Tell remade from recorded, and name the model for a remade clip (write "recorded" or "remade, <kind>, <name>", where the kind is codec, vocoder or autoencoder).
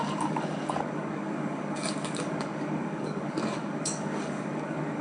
remade, codec, DAC